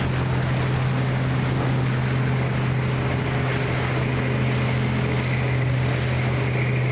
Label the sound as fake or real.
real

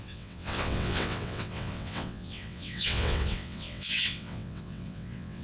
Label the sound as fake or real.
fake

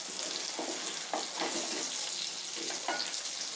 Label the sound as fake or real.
real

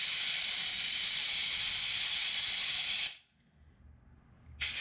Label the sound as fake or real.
real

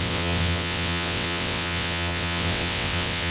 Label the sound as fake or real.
fake